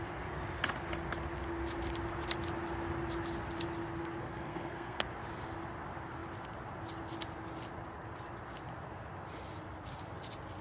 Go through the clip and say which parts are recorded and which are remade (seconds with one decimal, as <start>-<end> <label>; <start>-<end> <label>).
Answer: 0.0-4.2 recorded; 4.2-5.0 remade; 5.0-10.6 recorded